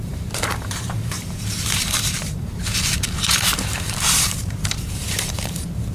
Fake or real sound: fake